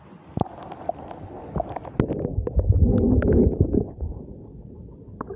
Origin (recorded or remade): recorded